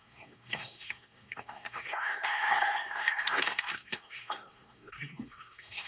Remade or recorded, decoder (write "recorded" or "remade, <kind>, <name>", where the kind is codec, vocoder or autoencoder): remade, codec, SNAC